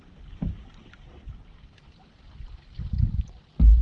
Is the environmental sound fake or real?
real